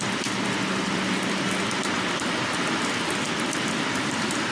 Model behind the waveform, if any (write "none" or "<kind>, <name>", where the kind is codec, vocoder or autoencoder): none